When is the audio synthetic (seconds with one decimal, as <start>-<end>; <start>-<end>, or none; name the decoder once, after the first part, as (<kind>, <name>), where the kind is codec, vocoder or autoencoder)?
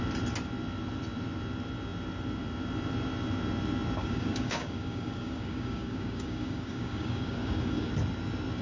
4.0-7.9 (codec, DAC)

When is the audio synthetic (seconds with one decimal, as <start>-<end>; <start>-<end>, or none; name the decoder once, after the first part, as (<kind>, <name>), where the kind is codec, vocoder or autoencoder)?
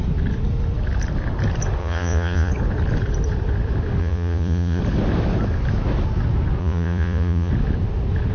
1.8-2.5 (vocoder, Vocos); 4.0-4.8; 6.6-7.5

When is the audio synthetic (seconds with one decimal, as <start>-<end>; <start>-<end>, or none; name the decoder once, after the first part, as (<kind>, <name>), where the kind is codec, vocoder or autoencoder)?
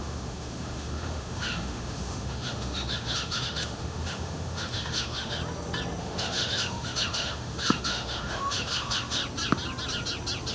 0.0-5.4 (autoencoder, DAC-VAE); 6.0-9.2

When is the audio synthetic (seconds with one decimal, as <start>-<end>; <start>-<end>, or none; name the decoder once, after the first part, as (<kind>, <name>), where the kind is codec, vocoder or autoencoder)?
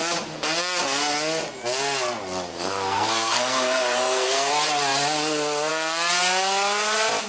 2.5-4.5 (codec, SNAC)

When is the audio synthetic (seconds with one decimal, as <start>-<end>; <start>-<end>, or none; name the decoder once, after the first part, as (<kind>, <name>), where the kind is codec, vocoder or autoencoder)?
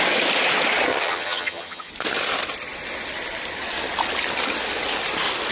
0.9-1.9 (vocoder, HiFi-GAN)